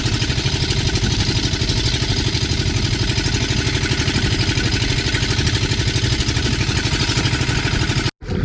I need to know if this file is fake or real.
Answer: real